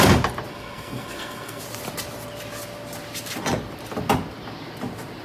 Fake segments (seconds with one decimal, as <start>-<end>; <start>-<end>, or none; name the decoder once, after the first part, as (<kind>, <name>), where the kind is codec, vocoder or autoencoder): 0.5-1.6 (codec, SNAC)